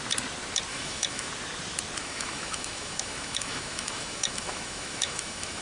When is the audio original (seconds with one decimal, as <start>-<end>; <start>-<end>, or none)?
0.0-0.7; 1.3-2.0

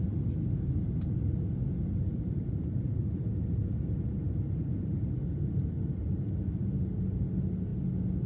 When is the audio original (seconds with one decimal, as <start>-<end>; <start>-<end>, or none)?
0.0-2.1; 5.6-8.3

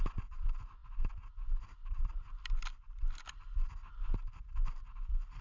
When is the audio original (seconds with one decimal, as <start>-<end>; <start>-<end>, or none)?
0.0-5.4

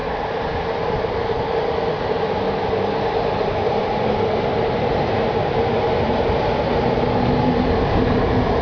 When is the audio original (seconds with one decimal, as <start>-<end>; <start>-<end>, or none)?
1.2-1.9

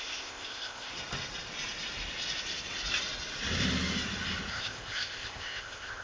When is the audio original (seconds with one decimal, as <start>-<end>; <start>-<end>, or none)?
0.9-4.5

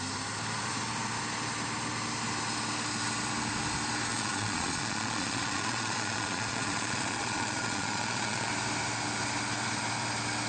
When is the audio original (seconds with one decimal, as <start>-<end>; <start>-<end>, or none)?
0.0-4.1; 8.5-10.5

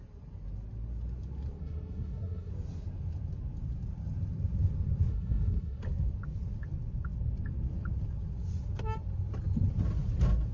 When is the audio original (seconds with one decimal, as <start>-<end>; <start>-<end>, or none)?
0.0-1.6; 2.5-5.1; 5.8-10.5